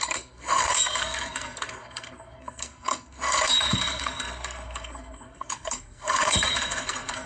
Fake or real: fake